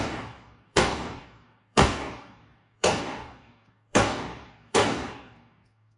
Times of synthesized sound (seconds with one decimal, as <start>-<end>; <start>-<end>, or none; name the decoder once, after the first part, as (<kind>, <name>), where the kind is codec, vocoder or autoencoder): 0.0-6.0 (codec, DAC)